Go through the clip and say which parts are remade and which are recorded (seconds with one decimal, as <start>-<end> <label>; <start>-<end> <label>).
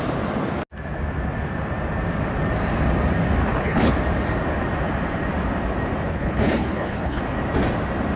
0.0-3.4 recorded; 3.4-3.9 remade; 3.9-6.1 recorded; 6.1-7.2 remade; 7.2-8.2 recorded